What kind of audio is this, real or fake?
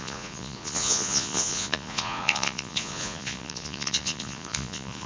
fake